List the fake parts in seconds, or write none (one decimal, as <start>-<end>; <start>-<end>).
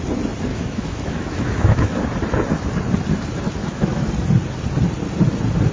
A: 0.5-2.0; 3.6-4.1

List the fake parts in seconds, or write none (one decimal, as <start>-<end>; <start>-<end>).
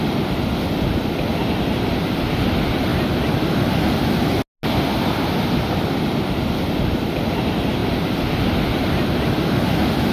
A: none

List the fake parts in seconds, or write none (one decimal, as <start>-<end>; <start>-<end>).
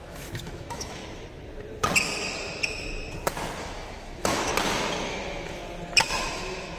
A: 0.0-1.0; 3.6-4.5; 5.1-5.6; 6.2-6.8